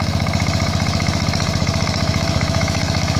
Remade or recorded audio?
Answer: remade